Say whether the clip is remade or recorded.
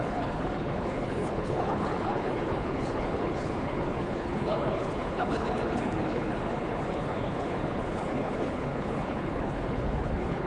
remade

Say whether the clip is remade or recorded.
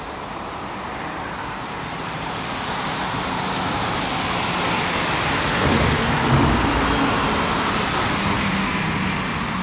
recorded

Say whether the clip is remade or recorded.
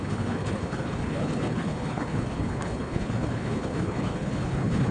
remade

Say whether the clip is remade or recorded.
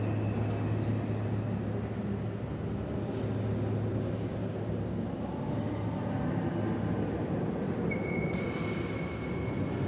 recorded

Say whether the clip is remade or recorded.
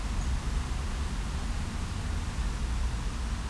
recorded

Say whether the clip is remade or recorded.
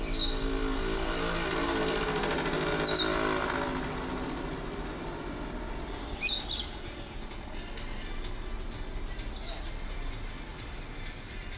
recorded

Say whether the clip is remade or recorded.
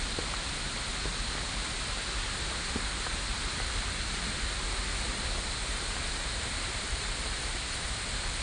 recorded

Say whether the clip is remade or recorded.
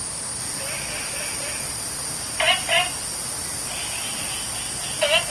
recorded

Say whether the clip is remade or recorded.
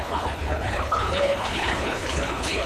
remade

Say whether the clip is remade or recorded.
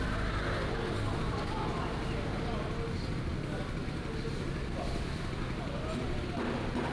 recorded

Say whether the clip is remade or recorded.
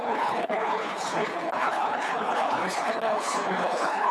remade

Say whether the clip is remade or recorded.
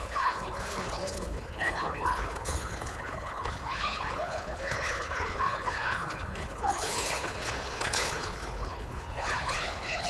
remade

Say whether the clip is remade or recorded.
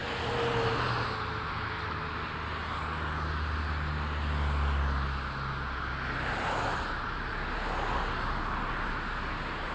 recorded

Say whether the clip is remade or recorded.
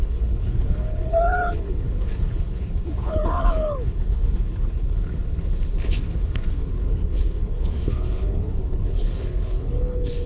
remade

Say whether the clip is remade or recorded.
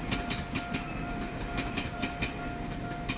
recorded